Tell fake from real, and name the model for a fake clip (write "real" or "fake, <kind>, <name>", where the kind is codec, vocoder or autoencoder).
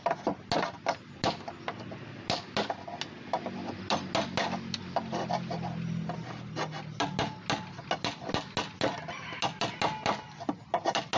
real